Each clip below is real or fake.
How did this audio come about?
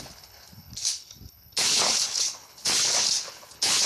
fake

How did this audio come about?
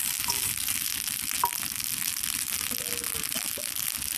real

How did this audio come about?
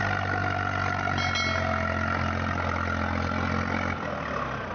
real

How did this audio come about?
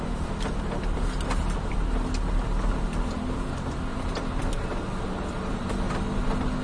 real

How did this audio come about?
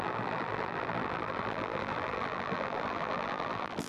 fake